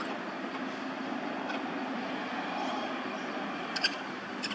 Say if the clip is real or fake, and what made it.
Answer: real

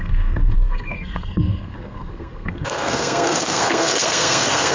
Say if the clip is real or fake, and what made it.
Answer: fake, codec, SNAC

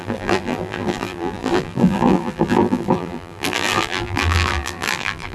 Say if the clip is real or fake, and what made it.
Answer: fake, vocoder, BigVGAN v2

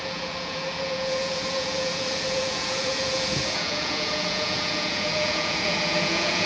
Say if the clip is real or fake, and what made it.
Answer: fake, vocoder, Vocos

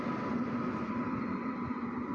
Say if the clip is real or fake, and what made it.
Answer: real